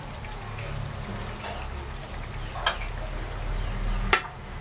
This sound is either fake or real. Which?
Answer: real